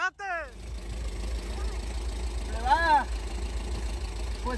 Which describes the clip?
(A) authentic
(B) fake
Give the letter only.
A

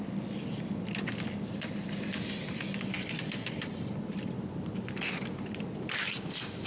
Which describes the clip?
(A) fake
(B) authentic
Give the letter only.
B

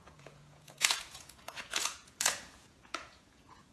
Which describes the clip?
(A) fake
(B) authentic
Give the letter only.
A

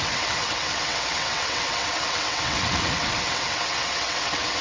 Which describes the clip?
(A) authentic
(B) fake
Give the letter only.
B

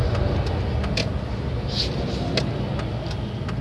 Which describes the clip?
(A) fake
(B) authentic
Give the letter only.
B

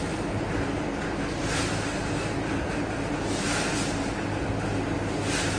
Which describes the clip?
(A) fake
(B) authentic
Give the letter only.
B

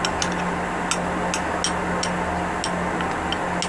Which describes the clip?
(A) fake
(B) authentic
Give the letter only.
B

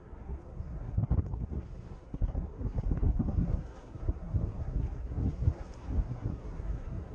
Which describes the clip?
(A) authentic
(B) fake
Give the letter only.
B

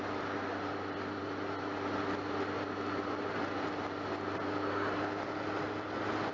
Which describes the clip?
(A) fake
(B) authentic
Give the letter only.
B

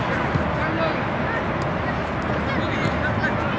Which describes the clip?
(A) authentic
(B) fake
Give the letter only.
A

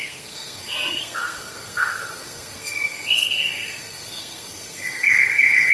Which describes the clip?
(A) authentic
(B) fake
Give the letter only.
B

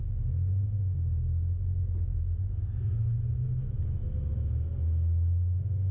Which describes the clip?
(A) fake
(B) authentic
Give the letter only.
B